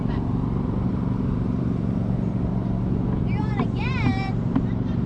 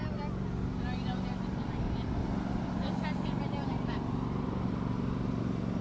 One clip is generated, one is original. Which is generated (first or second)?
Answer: first